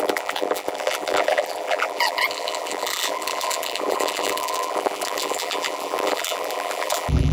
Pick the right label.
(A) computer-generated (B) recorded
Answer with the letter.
A